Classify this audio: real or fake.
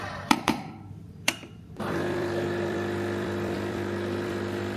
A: fake